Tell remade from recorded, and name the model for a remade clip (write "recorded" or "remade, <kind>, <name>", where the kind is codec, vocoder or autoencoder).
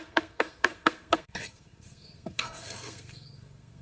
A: remade, codec, SNAC